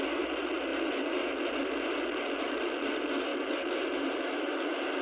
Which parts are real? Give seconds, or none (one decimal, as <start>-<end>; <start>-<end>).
3.3-4.0